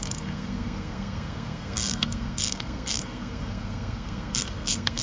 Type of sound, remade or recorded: remade